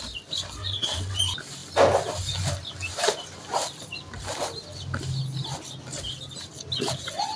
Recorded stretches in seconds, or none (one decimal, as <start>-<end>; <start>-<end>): 0.0-0.6; 1.2-7.4